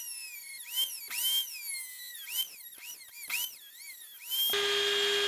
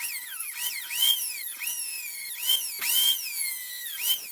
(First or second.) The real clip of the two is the first